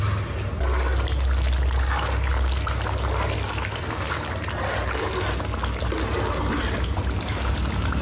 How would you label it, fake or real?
real